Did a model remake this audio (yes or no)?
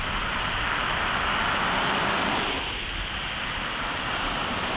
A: no